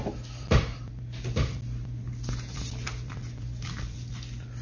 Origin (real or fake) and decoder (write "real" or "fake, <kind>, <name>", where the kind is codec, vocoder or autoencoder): real